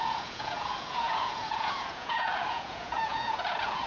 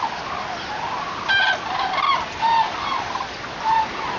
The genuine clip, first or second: second